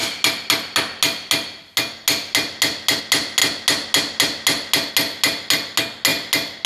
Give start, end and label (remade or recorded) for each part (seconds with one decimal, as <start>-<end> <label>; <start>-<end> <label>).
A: 0.0-6.7 recorded